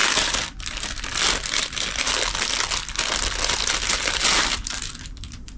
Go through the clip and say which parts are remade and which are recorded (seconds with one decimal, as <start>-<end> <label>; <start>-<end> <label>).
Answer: 0.0-3.4 recorded; 3.4-5.6 remade